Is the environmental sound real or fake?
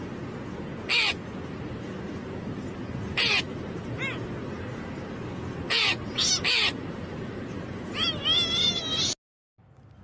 real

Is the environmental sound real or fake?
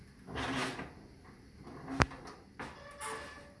real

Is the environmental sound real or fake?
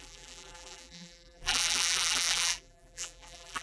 fake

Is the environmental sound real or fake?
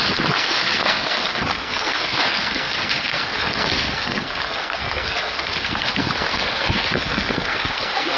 fake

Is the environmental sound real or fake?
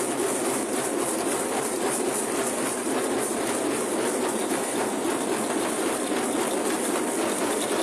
fake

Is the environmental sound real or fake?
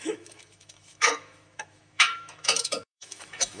fake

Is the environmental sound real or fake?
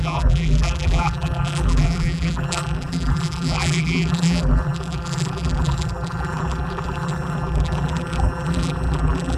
fake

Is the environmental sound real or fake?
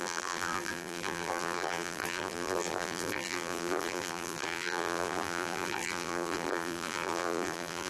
fake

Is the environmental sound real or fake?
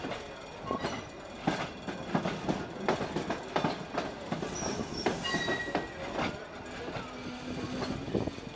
real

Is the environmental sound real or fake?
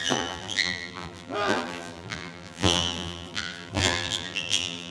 fake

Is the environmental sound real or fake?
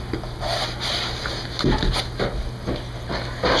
real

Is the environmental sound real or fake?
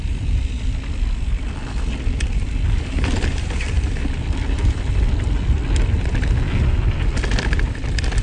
real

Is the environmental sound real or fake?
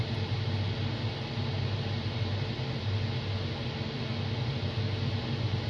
real